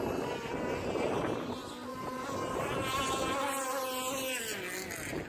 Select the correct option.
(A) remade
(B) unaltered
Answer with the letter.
B